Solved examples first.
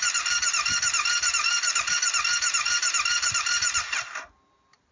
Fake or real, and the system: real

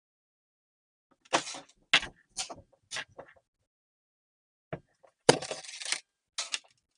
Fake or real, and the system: real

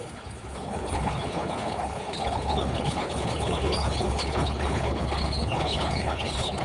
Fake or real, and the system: fake, codec, HILCodec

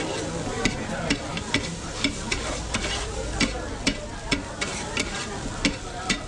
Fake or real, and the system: real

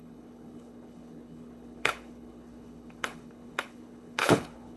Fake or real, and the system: fake, codec, HILCodec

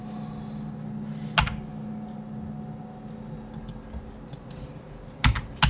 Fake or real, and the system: real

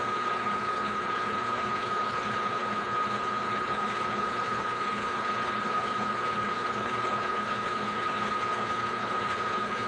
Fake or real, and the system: fake, codec, HILCodec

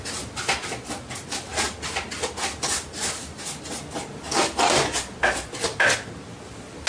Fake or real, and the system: real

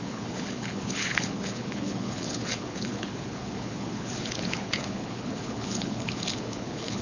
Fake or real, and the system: fake, codec, HILCodec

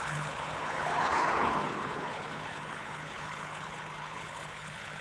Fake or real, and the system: fake, codec, HILCodec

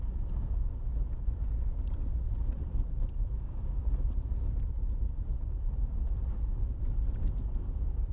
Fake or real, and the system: real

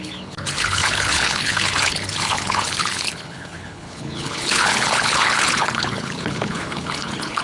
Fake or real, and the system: fake, codec, HILCodec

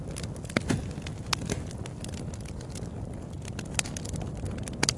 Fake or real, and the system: real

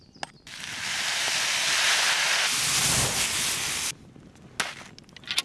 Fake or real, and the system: real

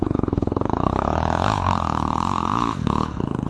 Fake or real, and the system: fake, codec, HILCodec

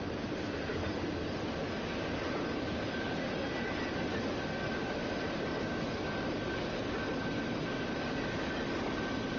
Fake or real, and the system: real